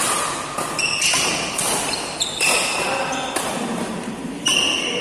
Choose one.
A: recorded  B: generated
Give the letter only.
A